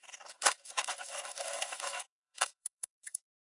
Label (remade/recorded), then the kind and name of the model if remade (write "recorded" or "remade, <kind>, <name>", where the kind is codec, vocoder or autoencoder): remade, codec, DAC